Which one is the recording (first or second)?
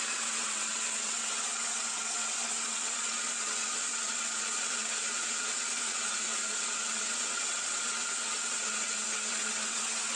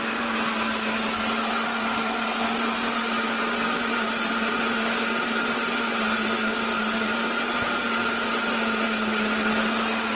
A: second